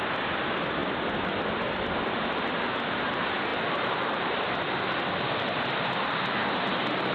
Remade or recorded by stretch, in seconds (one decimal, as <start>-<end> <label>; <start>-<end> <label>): 0.0-0.8 recorded; 0.8-2.5 remade; 2.5-3.5 recorded; 3.5-6.5 remade; 6.5-7.1 recorded